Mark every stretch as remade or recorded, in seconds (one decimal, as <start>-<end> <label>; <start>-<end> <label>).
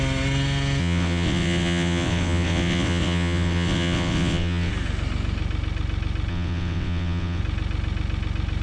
0.0-0.8 recorded; 0.8-4.7 remade; 4.7-6.3 recorded; 6.3-7.4 remade; 7.4-8.6 recorded